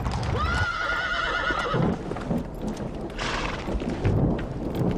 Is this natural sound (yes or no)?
yes